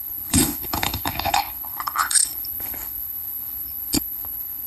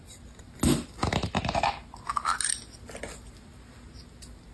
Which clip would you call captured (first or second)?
second